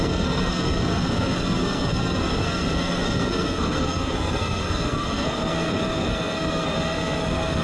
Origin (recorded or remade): remade